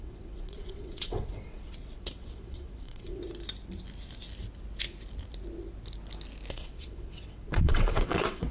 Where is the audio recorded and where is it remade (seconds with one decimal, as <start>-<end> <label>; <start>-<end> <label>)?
0.0-3.2 remade; 3.2-6.5 recorded; 6.5-8.5 remade